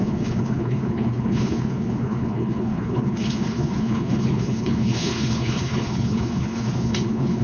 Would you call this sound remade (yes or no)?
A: yes